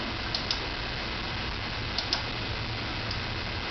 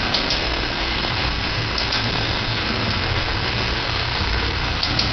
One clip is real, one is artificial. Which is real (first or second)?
first